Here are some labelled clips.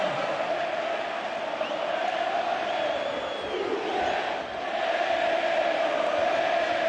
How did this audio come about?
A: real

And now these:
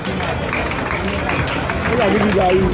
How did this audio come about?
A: real